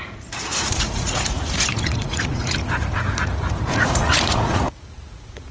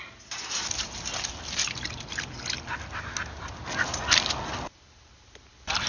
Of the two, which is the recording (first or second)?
second